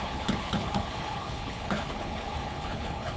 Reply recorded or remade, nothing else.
remade